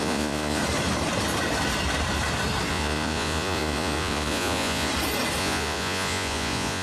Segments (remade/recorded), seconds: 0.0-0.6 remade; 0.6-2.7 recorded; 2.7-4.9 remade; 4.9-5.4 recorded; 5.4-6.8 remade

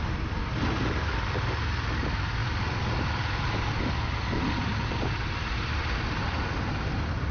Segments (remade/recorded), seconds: 0.0-7.3 recorded

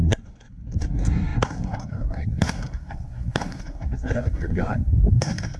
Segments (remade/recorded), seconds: 0.0-5.6 remade

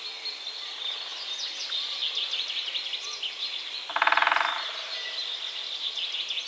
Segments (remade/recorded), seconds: 0.0-6.5 recorded

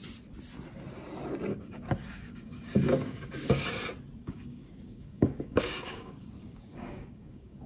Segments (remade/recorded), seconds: 0.0-1.5 recorded; 1.5-3.5 remade; 3.5-4.2 recorded; 4.2-7.7 remade

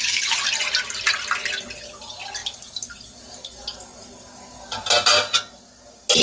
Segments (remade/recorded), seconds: 0.0-6.2 recorded

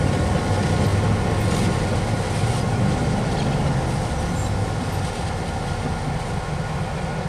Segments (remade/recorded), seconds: 0.0-7.3 recorded